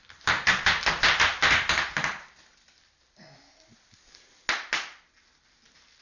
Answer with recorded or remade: recorded